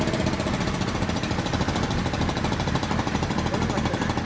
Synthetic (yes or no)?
no